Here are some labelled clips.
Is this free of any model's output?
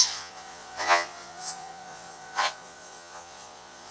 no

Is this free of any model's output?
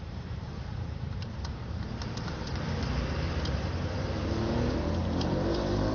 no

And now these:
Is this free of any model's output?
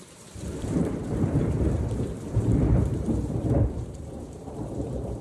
no